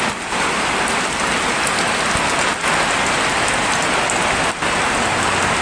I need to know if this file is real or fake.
real